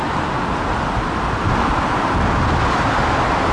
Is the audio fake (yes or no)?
no